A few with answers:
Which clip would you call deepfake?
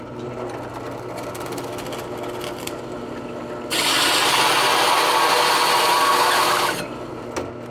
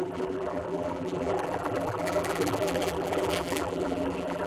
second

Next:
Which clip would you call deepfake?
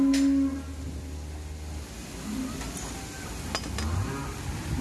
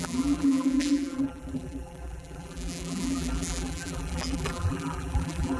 second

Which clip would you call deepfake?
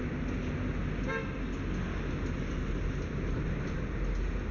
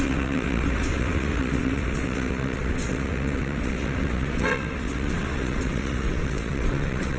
second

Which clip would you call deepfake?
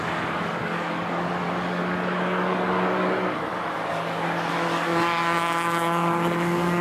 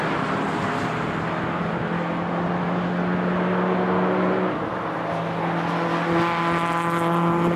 first